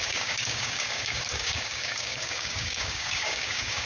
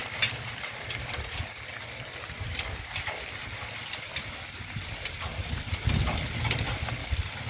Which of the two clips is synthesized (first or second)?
first